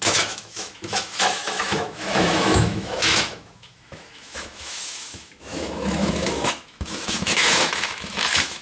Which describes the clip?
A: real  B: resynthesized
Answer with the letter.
B